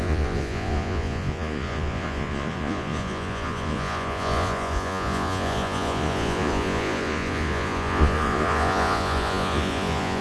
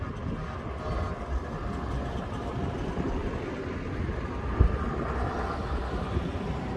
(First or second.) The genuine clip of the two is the second